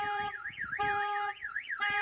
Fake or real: fake